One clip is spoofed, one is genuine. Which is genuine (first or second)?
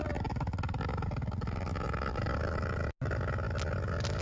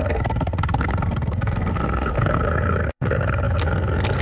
first